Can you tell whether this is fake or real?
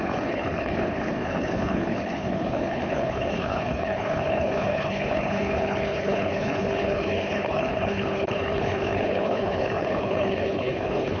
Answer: fake